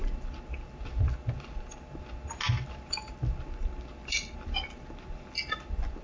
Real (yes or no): yes